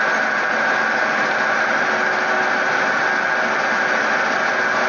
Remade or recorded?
recorded